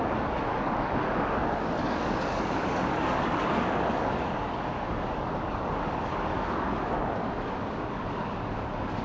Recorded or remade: remade